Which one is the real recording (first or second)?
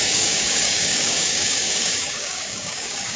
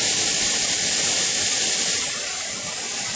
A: second